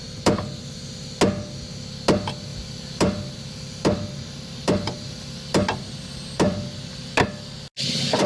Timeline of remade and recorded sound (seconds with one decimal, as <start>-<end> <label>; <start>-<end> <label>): 0.0-2.5 recorded; 2.5-7.1 remade; 7.1-8.3 recorded